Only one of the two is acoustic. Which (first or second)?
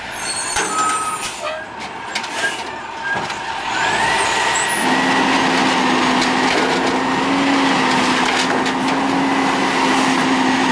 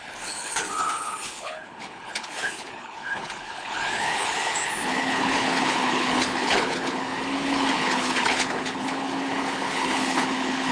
first